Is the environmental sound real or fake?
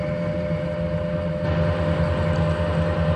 real